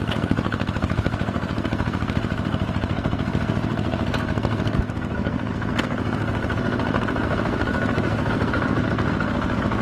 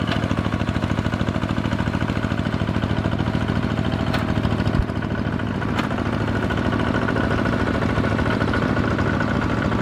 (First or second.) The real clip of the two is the second